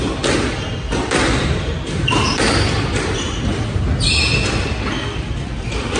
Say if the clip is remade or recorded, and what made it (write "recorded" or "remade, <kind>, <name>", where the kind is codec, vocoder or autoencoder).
recorded